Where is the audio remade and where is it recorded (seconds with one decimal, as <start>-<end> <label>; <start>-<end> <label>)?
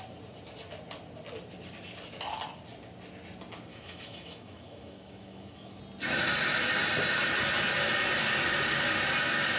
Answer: 0.0-3.7 recorded; 3.7-5.8 remade; 5.8-9.6 recorded